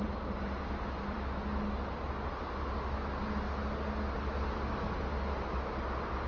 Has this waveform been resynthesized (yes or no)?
no